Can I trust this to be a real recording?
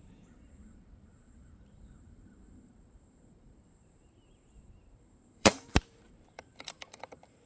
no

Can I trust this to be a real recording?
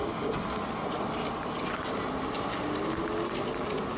yes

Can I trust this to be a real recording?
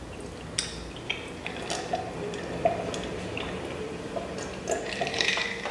yes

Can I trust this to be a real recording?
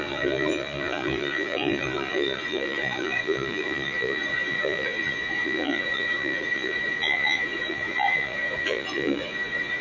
no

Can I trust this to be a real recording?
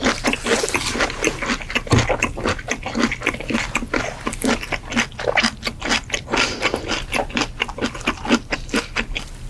yes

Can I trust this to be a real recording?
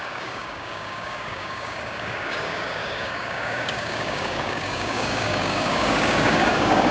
no